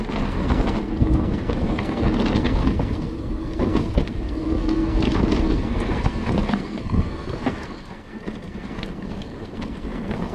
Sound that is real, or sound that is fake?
fake